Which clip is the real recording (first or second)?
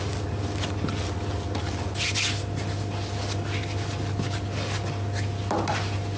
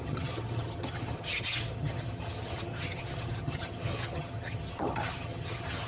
first